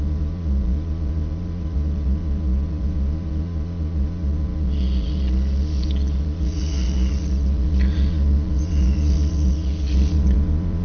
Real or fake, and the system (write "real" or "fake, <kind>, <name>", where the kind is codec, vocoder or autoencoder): fake, vocoder, Vocos